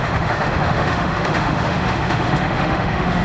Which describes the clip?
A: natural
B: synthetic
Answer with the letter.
B